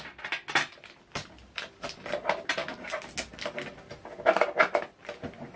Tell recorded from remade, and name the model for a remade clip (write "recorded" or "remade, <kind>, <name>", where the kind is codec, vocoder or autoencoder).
recorded